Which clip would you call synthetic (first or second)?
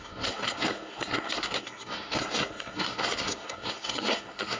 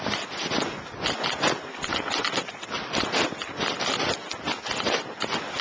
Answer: first